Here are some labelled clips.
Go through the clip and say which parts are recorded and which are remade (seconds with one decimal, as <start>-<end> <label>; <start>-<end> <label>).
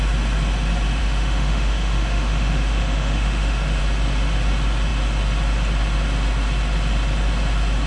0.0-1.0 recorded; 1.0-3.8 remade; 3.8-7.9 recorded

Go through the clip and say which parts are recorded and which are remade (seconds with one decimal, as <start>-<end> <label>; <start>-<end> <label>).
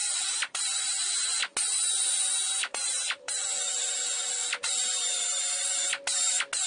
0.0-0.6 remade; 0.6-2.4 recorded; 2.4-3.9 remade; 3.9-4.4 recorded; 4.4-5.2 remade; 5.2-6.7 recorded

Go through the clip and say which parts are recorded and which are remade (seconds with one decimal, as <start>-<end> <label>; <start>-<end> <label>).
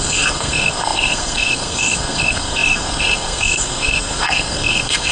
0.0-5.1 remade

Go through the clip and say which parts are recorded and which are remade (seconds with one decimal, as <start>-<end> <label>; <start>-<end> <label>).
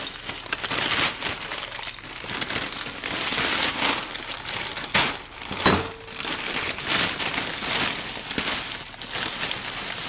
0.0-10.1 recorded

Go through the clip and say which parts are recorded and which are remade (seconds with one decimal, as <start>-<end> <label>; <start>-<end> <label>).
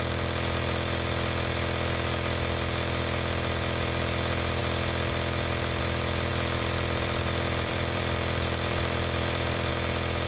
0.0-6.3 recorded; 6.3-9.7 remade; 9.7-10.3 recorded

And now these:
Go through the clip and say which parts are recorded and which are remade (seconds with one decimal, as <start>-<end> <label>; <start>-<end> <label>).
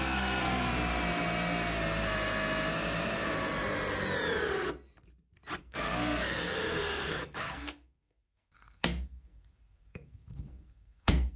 0.0-0.7 remade; 0.7-5.6 recorded; 5.6-11.4 remade